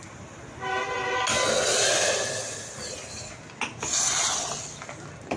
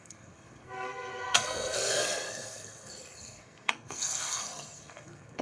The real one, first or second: first